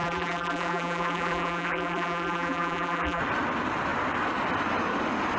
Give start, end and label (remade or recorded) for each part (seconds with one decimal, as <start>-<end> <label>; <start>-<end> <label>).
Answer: 0.0-3.2 remade; 3.2-5.4 recorded